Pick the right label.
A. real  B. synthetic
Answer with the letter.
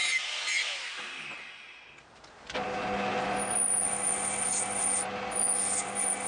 A